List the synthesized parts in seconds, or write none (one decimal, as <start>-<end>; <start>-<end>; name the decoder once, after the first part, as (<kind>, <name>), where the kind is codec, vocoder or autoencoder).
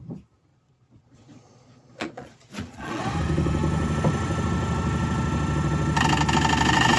0.5-3.0 (vocoder, Vocos)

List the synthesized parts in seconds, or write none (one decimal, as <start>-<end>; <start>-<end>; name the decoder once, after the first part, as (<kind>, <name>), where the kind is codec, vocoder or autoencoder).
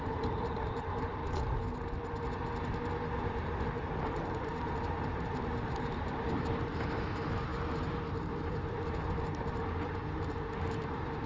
0.0-1.2 (vocoder, BigVGAN v2); 4.4-11.3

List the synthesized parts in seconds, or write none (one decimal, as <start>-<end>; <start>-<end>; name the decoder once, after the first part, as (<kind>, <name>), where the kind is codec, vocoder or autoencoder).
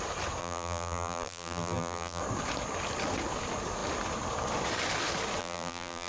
0.4-2.2 (vocoder, BigVGAN v2); 5.4-6.1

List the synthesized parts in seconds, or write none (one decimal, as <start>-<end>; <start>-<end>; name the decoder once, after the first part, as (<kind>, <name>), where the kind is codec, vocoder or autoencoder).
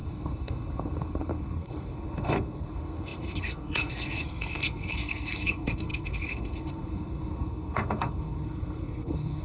0.0-9.4 (codec, SNAC)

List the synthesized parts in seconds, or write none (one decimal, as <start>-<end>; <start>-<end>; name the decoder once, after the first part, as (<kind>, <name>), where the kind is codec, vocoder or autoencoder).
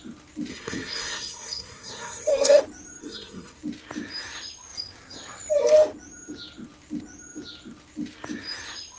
0.5-2.6 (codec, SNAC); 3.0-3.6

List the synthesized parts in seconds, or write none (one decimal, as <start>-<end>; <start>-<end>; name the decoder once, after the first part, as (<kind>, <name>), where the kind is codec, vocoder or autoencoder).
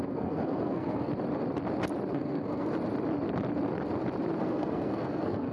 0.0-1.1 (codec, SNAC); 2.1-2.7; 4.4-5.5